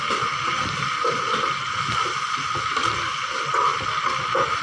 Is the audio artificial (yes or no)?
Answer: no